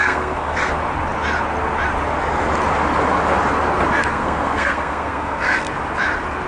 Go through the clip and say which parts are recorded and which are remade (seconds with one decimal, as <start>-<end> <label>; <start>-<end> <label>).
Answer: 0.0-0.7 remade; 0.7-4.1 recorded; 4.1-5.7 remade; 5.7-6.5 recorded